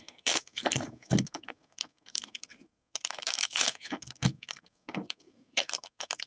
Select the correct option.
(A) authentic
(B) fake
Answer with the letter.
B